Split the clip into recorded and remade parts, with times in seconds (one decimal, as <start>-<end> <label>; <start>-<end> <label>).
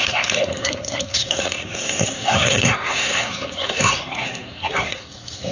0.0-5.5 remade